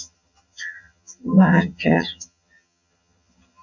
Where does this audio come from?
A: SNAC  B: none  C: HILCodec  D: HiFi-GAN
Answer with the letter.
D